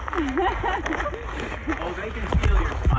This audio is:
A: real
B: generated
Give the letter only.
A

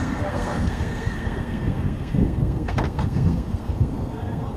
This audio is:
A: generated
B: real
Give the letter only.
A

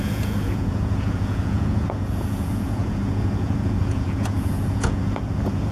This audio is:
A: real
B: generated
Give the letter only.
B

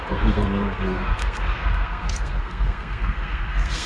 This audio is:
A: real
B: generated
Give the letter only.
B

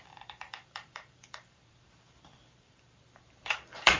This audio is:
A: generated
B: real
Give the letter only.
A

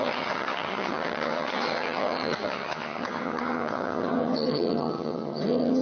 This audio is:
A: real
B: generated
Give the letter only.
B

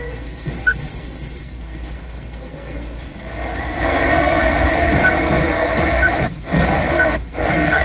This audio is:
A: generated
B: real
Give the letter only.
A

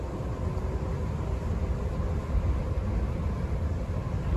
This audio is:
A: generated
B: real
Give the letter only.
B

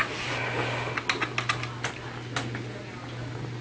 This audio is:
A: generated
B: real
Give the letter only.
B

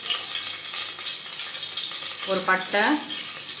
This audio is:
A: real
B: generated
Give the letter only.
A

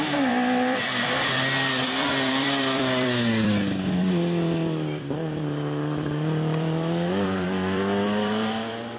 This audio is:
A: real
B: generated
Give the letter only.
B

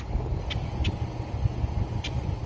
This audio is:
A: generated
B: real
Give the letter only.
B